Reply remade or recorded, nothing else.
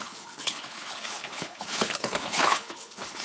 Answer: remade